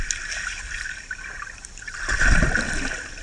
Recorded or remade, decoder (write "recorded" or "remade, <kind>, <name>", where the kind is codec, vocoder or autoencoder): recorded